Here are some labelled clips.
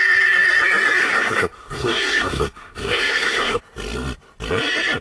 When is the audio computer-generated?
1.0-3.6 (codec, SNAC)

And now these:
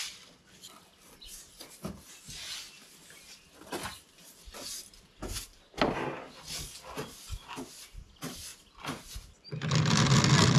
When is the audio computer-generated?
none

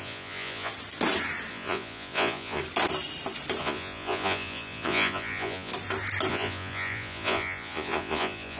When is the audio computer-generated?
0.0-0.7 (vocoder, Vocos); 1.5-2.6; 3.6-5.7; 6.3-8.6

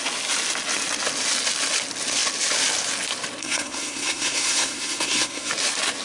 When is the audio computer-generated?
3.4-5.5 (codec, SNAC)